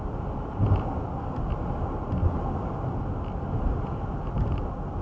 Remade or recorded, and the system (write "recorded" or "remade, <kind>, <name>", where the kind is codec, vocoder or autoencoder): recorded